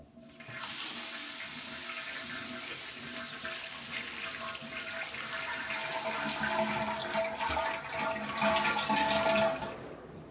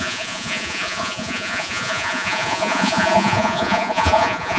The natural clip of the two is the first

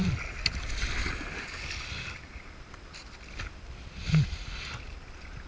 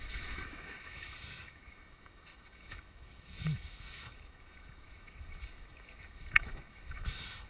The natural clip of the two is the first